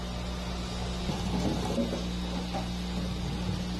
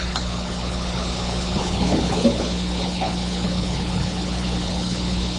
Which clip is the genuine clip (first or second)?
first